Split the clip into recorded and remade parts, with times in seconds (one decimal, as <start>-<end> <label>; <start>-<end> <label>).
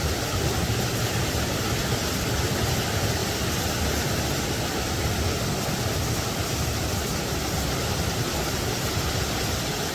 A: 0.0-9.9 recorded